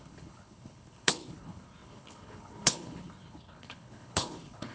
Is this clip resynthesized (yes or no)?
yes